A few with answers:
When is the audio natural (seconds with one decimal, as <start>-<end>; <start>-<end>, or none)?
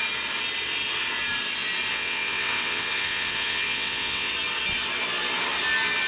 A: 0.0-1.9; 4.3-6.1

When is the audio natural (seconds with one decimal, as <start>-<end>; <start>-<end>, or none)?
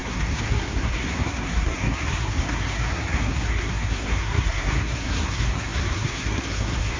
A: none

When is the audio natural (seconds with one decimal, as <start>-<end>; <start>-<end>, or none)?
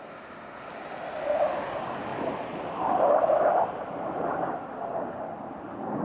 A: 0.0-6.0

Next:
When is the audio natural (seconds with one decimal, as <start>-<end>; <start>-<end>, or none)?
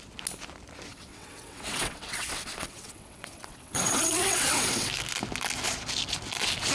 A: 0.0-0.9; 4.9-6.7